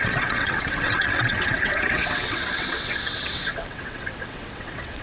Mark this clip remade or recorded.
remade